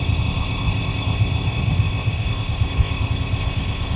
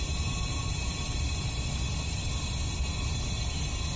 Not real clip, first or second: first